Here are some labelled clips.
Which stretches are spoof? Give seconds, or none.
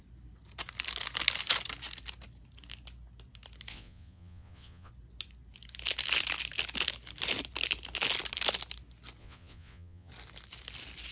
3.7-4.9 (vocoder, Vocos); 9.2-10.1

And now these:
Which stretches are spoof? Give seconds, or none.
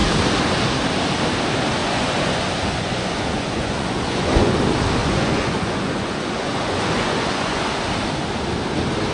1.8-4.5 (vocoder, Vocos); 5.0-7.7